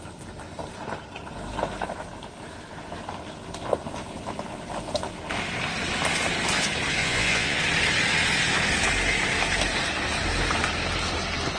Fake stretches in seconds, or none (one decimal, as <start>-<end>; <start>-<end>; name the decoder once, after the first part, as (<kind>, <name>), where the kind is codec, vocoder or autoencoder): 7.0-7.6 (vocoder, Vocos)